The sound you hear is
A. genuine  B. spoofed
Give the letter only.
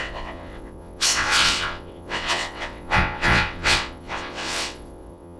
B